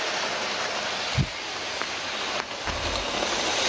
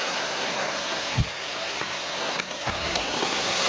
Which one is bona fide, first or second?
first